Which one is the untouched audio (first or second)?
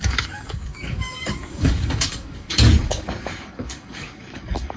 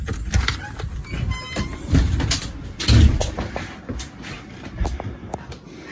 second